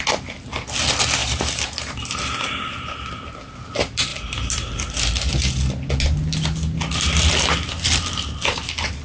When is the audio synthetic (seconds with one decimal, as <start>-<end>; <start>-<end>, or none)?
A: 1.2-2.9; 4.1-5.0